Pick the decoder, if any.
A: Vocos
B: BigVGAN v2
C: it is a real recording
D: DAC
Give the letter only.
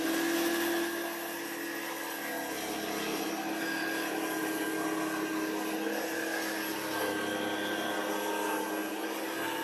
C